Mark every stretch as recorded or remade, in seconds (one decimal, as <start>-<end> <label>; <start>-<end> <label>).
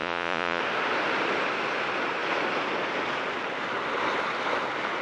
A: 0.0-0.6 remade; 0.6-5.0 recorded